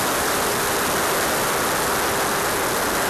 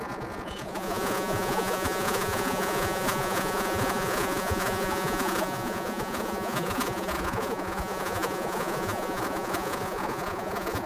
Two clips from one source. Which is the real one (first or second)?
first